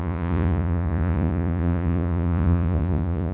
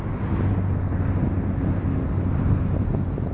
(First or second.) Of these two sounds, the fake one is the first